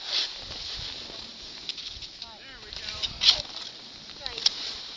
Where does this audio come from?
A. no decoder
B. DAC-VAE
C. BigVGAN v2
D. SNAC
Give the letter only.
A